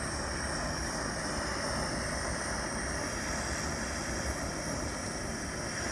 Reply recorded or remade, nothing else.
recorded